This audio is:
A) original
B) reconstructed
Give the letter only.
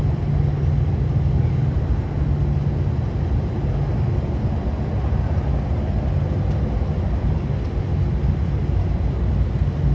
A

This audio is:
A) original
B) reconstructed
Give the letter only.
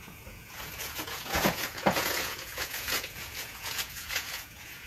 B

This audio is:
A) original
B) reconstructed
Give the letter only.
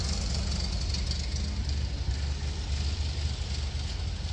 A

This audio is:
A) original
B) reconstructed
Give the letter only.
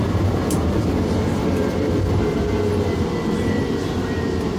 B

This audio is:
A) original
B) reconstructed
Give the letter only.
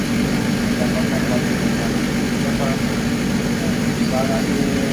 A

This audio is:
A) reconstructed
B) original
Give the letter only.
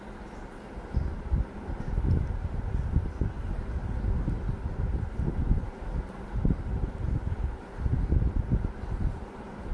B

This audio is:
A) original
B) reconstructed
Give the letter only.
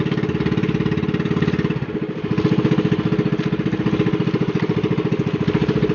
A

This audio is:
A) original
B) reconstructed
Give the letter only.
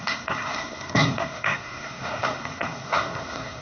B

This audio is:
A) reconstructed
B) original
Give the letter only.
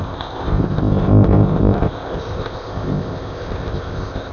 A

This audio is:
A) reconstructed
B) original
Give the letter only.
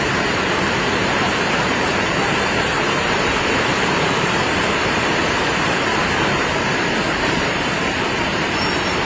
A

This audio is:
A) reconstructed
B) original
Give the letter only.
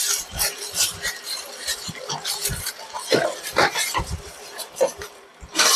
A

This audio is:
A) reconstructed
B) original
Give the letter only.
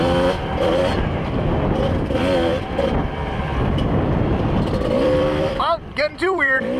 A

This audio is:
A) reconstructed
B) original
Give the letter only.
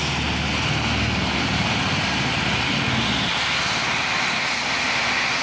B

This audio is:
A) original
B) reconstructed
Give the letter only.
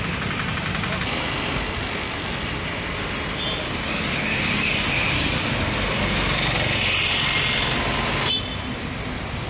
A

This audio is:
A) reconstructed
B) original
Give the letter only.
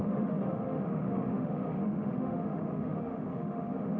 A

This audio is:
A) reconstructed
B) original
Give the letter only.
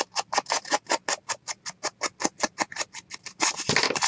B